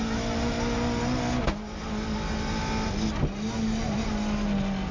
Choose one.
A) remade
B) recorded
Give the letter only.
B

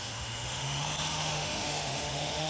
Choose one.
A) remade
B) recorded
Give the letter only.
A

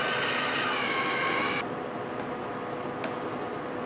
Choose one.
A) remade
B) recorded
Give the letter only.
B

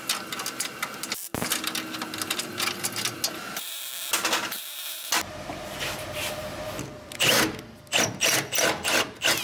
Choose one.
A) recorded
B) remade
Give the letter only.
A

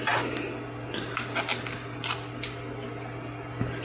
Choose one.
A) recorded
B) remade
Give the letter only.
A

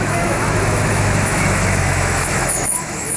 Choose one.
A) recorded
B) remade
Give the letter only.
B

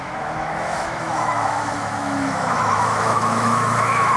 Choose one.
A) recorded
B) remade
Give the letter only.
B